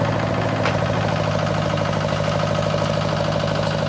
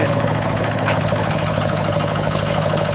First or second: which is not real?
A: second